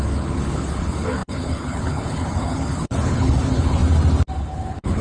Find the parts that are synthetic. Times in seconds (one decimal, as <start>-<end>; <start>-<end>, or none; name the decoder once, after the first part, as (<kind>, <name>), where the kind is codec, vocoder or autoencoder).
0.0-3.8 (codec, HILCodec); 4.4-5.0